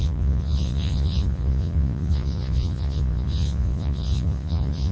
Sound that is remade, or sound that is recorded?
remade